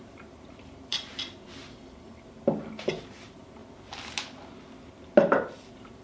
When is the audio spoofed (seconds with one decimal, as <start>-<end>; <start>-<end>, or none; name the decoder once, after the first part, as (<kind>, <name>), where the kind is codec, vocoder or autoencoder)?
0.0-3.6 (vocoder, BigVGAN v2); 5.3-6.0